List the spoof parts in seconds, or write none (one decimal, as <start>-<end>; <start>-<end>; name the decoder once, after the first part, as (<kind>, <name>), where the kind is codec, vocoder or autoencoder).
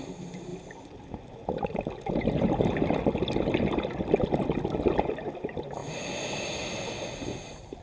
none